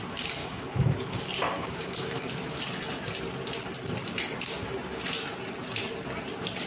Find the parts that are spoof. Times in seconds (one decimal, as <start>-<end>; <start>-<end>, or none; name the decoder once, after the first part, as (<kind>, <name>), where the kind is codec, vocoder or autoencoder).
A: 0.4-1.2 (autoencoder, DAC-VAE); 1.6-2.6